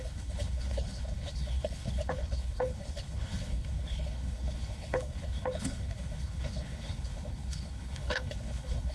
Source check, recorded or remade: remade